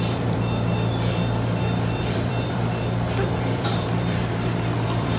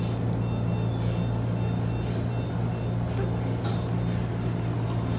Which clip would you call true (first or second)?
second